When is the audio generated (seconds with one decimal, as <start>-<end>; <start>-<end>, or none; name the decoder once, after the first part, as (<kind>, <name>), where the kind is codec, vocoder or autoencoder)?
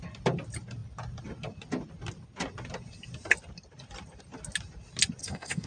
5.2-5.7 (codec, SNAC)